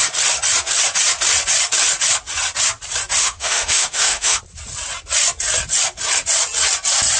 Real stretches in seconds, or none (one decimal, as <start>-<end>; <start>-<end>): 0.0-3.2; 4.4-7.2